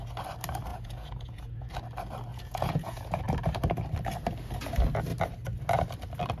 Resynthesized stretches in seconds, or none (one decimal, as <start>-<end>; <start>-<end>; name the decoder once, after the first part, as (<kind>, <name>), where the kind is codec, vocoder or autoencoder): 0.7-1.7 (vocoder, Vocos); 2.3-3.2